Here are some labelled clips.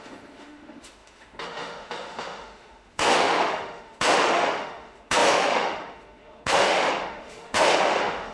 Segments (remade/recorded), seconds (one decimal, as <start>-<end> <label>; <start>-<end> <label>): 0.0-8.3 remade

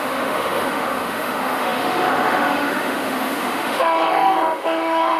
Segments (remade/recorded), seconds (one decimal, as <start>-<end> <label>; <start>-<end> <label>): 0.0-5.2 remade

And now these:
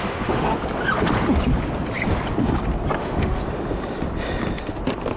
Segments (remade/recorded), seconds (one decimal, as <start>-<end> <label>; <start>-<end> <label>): 0.0-0.5 remade; 0.5-3.0 recorded; 3.0-3.4 remade; 3.4-5.2 recorded

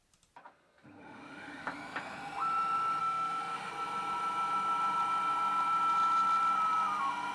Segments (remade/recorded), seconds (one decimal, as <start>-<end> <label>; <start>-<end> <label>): 0.0-1.0 recorded; 1.0-1.6 remade; 1.6-3.0 recorded; 3.0-3.7 remade; 3.7-7.3 recorded